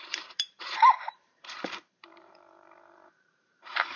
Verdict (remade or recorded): remade